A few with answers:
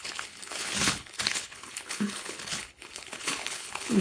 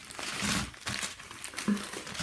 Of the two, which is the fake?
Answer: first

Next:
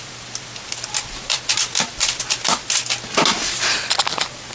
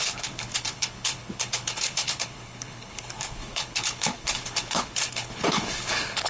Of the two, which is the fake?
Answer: second